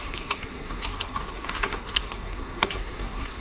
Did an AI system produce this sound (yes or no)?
yes